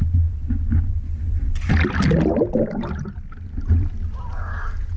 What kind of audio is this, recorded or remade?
recorded